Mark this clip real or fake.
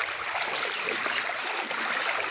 real